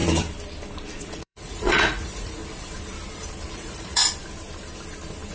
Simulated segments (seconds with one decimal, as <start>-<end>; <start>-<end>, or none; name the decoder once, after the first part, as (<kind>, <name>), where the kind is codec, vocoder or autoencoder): 0.9-2.4 (vocoder, Vocos); 3.5-4.0